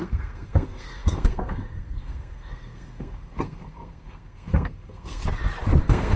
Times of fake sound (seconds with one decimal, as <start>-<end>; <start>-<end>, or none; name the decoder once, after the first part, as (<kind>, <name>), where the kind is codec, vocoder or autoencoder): 0.0-5.2 (codec, SNAC); 5.8-6.2